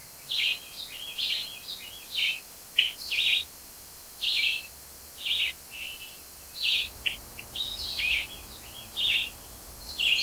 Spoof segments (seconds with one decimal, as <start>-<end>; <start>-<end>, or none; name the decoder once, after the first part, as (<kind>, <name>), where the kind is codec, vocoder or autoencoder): 3.6-4.7 (vocoder, BigVGAN v2)